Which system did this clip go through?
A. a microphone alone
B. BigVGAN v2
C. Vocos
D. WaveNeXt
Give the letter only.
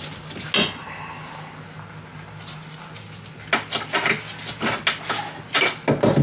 A